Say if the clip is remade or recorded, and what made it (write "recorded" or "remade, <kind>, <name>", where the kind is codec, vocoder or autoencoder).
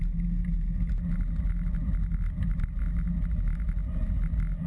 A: recorded